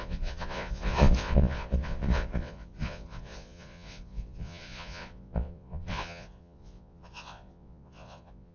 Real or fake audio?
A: fake